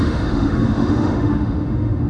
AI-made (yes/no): yes